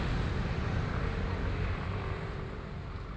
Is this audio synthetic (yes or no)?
no